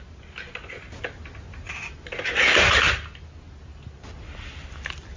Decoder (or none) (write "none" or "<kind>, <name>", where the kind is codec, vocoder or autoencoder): none